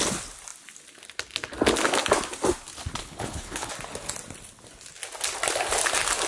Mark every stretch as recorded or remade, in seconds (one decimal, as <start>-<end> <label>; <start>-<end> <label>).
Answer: 0.0-3.0 recorded; 3.0-3.7 remade; 3.7-6.3 recorded